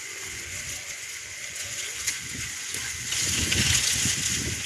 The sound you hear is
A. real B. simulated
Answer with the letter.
B